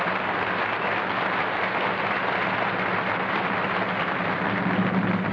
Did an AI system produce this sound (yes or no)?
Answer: no